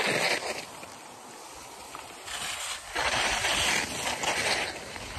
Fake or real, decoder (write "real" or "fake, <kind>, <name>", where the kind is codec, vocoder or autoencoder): real